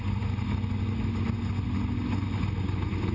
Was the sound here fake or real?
real